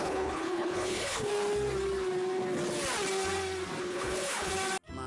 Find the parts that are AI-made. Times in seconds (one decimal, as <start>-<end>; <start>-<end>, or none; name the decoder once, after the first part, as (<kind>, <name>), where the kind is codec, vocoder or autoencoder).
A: 0.0-1.3 (codec, HILCodec); 3.8-4.5